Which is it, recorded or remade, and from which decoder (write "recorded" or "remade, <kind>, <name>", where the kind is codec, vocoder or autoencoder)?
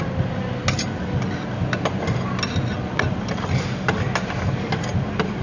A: recorded